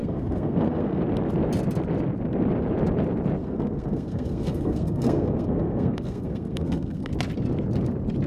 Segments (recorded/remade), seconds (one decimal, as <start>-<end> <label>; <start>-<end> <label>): 0.0-1.0 remade; 1.0-3.4 recorded; 3.4-7.1 remade; 7.1-8.3 recorded